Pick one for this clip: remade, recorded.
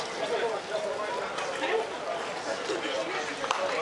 recorded